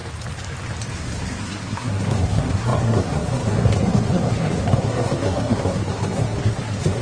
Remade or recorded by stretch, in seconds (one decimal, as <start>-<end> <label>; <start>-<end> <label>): 0.0-0.9 recorded; 0.9-7.0 remade